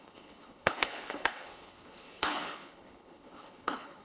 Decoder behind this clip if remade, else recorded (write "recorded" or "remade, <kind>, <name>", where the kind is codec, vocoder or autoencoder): remade, codec, HILCodec